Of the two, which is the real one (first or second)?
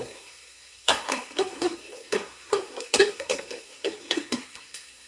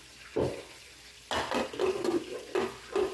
second